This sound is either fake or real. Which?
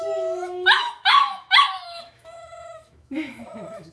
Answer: fake